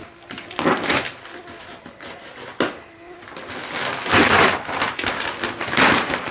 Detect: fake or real real